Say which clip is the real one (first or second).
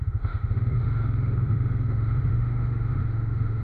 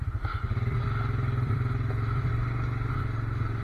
second